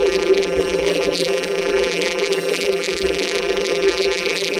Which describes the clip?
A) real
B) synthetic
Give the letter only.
B